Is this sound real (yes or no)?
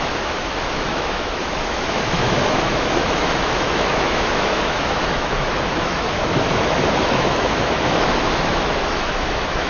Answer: no